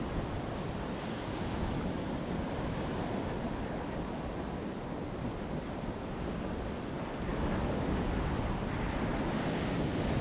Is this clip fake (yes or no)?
no